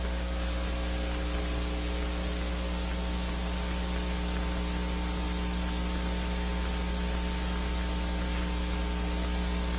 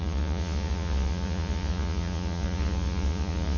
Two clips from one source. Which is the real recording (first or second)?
first